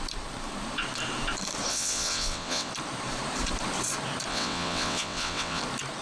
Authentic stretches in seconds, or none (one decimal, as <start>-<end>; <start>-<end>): 0.0-1.7; 2.7-4.3; 5.6-6.0